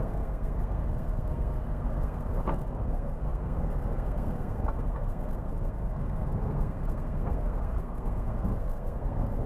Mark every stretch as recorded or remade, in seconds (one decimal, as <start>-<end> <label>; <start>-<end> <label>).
0.0-9.5 remade